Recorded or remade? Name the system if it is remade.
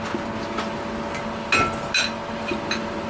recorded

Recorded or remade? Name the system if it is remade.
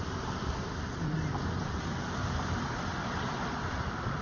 remade, vocoder, BigVGAN v2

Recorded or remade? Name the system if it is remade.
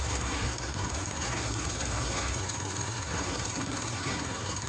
remade, codec, SNAC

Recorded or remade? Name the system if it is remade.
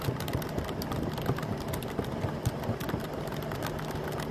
recorded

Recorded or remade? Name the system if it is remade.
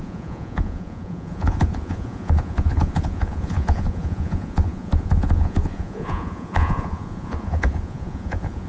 remade, vocoder, Vocos